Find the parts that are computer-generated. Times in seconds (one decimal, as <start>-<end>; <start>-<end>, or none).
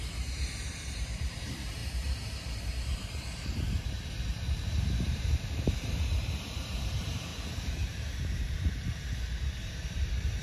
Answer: 0.0-10.4